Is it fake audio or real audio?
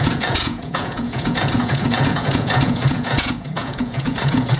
fake